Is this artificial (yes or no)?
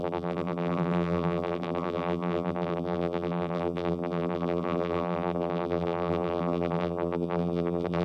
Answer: yes